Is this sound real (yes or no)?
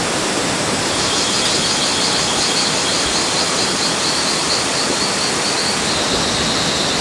yes